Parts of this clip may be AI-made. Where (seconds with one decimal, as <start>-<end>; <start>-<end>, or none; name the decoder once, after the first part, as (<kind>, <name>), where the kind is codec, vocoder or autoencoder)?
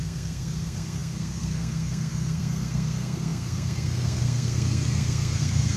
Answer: 0.0-5.8 (codec, SNAC)